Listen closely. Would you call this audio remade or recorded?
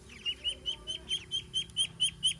recorded